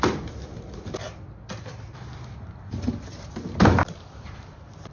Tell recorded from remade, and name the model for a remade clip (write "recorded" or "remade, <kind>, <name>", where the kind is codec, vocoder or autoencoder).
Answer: recorded